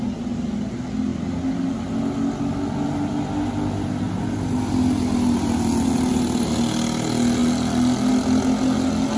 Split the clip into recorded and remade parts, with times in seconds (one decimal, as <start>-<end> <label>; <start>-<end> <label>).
0.0-9.2 recorded